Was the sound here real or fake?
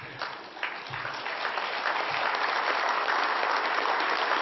real